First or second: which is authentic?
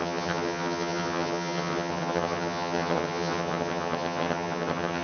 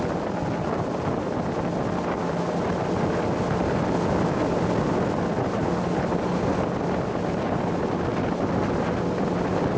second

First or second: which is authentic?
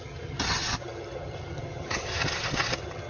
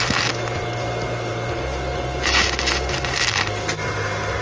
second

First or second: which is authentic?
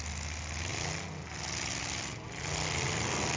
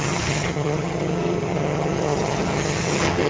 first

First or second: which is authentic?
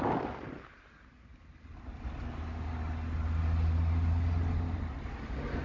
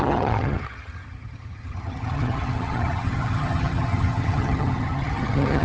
first